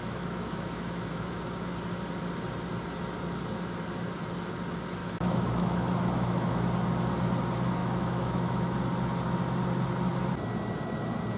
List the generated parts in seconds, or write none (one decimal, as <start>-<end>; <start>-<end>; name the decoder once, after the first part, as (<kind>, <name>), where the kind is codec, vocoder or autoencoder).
0.0-1.4 (autoencoder, DAC-VAE); 5.0-6.5; 7.8-8.6